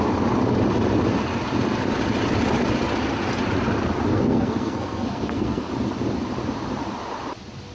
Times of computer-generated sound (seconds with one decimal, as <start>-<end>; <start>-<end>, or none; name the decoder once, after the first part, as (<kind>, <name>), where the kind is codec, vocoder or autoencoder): 4.1-5.7 (codec, SNAC)